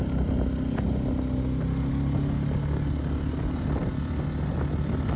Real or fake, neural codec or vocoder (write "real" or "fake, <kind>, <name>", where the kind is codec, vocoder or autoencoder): real